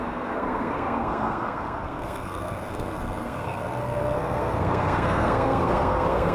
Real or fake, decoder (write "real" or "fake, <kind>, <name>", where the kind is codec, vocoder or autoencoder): fake, codec, SNAC